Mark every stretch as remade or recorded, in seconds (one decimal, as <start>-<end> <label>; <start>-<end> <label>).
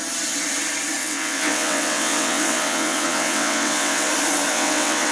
0.0-1.0 recorded; 1.0-4.1 remade; 4.1-4.5 recorded; 4.5-5.1 remade